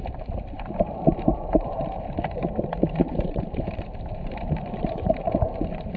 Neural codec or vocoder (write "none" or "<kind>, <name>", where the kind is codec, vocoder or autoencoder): vocoder, BigVGAN v2